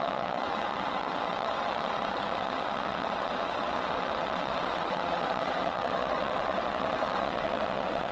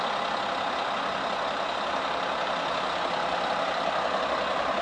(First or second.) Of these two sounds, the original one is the second